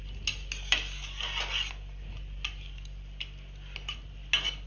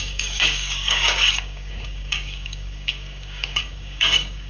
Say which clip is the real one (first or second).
first